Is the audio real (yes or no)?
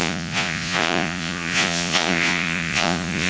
no